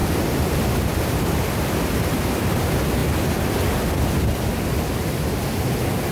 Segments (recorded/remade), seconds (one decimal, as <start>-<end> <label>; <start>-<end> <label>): 0.0-6.1 recorded

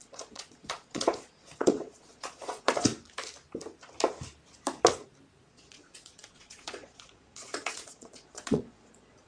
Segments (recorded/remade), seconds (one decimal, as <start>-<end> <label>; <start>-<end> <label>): 0.0-2.9 remade; 2.9-5.5 recorded; 5.5-9.3 remade

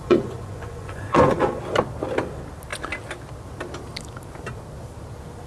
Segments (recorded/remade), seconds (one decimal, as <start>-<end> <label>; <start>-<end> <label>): 0.0-1.6 remade; 1.6-5.5 recorded

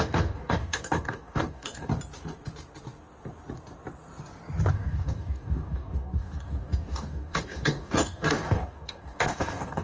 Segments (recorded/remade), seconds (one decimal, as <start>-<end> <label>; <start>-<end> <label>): 0.0-1.9 remade; 1.9-4.7 recorded; 4.7-9.8 remade

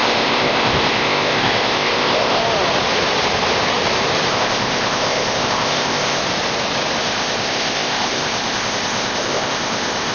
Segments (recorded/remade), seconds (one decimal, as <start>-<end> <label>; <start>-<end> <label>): 0.0-2.4 remade; 2.4-4.3 recorded; 4.3-6.2 remade; 6.2-7.0 recorded; 7.0-10.1 remade